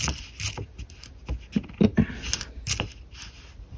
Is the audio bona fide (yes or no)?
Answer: yes